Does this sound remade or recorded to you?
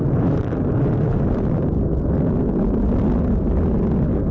remade